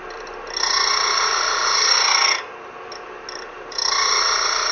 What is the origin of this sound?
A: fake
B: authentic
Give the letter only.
B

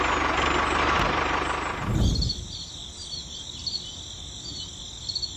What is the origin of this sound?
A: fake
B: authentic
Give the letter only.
B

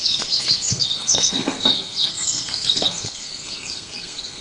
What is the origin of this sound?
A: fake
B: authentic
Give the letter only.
A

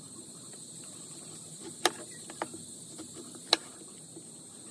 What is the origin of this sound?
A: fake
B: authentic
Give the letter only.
B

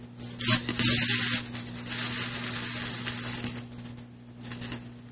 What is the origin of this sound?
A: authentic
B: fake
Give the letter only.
A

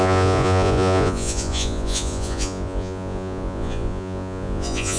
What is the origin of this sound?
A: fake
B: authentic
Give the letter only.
A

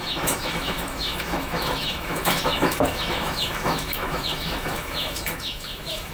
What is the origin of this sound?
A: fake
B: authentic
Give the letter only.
A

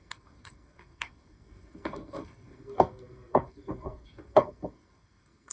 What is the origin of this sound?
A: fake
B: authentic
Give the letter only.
A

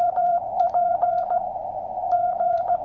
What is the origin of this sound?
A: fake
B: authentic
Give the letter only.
A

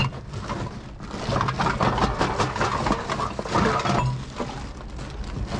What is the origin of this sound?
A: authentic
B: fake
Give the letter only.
A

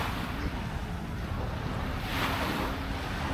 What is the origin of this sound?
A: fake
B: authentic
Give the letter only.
B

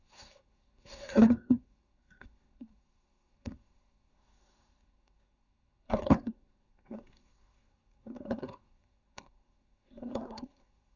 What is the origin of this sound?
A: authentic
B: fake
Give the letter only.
B